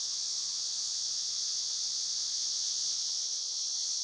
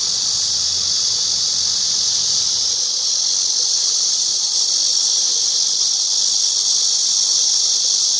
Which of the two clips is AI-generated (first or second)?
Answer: first